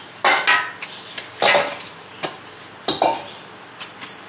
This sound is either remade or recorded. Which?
recorded